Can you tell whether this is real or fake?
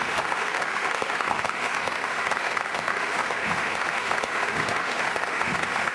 fake